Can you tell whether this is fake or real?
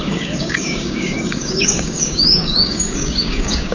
fake